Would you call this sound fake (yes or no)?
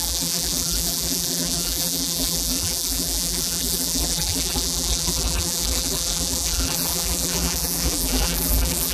yes